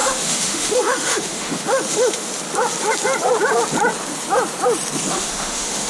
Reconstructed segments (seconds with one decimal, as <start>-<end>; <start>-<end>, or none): 0.0-2.3; 5.1-5.9